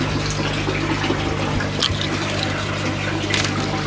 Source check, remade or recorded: recorded